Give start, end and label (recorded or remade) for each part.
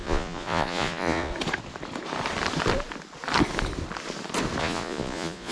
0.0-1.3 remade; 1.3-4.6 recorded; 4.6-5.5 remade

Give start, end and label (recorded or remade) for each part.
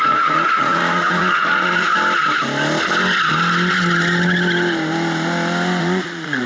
0.0-1.9 remade; 1.9-5.8 recorded; 5.8-6.5 remade